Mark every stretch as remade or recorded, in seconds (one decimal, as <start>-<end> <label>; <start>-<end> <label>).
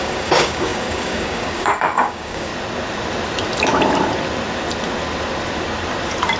0.0-2.5 remade; 2.5-6.4 recorded